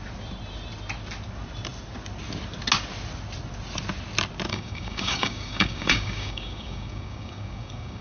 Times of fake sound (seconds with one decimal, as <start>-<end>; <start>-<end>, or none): 4.5-8.0